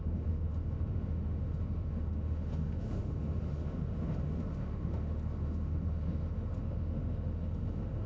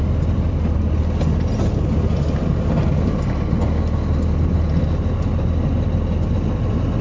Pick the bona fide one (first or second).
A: second